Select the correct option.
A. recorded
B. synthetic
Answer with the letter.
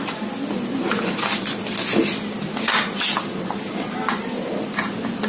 A